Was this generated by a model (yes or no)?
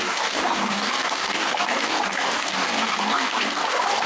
yes